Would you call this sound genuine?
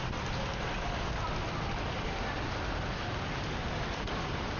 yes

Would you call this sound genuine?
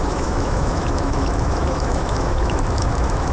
no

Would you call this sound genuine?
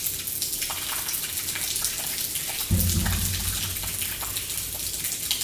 yes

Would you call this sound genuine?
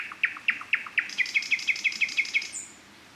yes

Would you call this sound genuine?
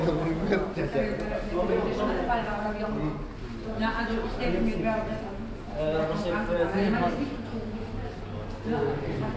yes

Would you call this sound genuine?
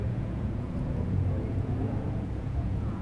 no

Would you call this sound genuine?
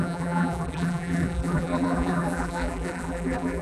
no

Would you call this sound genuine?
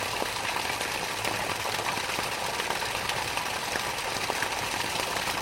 yes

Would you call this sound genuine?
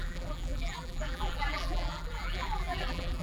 no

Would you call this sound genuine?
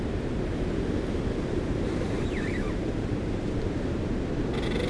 no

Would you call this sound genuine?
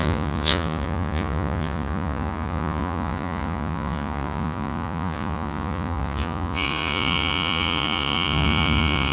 no